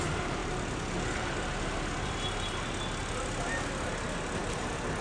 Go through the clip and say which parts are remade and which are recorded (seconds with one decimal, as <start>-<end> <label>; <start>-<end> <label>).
0.0-5.0 recorded